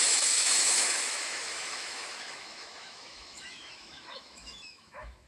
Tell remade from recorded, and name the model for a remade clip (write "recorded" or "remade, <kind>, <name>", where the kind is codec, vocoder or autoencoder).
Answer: remade, autoencoder, DAC-VAE